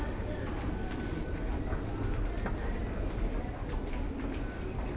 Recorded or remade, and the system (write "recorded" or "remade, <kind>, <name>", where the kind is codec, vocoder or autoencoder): recorded